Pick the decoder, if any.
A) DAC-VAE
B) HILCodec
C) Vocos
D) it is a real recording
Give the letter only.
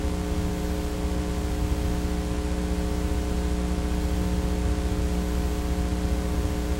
D